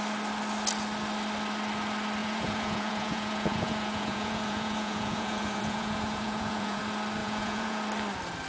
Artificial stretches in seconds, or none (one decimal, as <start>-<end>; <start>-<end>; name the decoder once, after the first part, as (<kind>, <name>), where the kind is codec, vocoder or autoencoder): 2.2-6.8 (vocoder, Vocos); 7.2-7.8